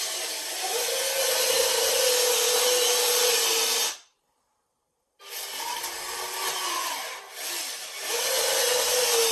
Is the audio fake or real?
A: real